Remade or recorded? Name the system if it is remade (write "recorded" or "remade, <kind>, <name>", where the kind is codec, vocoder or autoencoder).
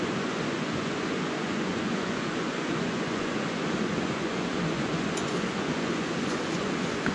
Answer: remade, vocoder, Vocos